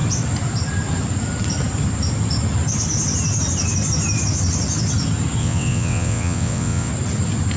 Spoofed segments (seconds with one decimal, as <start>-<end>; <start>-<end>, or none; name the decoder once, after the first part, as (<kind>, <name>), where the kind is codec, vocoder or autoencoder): 5.4-6.9 (vocoder, WaveNeXt)

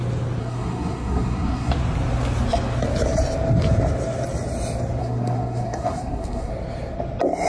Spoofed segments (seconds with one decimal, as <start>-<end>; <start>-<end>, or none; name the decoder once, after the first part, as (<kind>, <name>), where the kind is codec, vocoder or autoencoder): 0.4-1.7 (codec, SNAC); 5.0-6.5

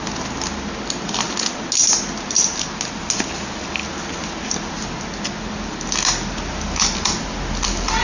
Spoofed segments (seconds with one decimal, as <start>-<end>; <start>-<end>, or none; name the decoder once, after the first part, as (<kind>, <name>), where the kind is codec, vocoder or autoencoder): none